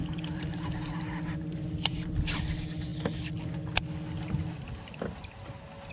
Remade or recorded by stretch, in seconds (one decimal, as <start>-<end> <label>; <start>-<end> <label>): 0.0-2.4 remade; 2.4-5.9 recorded